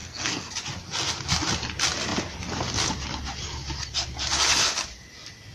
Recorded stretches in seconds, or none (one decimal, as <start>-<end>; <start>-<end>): 0.5-5.5